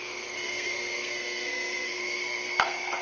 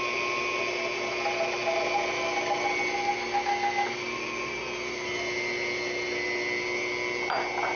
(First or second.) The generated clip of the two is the first